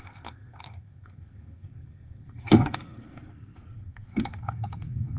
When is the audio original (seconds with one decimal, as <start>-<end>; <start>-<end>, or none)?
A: none